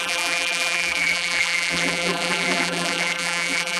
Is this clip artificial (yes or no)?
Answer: yes